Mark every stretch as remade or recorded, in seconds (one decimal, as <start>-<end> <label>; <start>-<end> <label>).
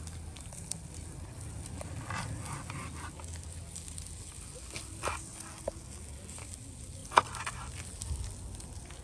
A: 0.0-9.0 recorded